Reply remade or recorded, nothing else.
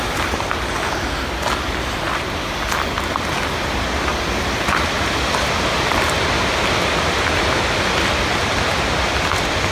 recorded